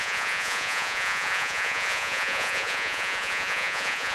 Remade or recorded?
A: remade